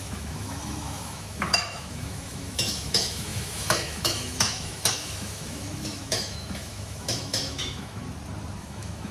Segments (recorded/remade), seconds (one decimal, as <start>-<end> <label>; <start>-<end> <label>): 0.0-8.0 remade; 8.0-8.6 recorded; 8.6-9.1 remade